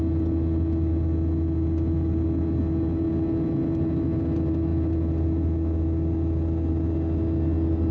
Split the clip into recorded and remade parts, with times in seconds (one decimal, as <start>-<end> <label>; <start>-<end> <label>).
0.0-7.9 recorded